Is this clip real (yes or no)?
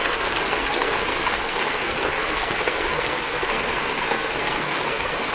no